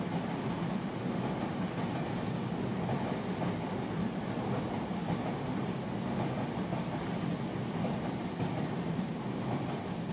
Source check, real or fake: real